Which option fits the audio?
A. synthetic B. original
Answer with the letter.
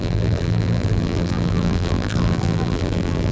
A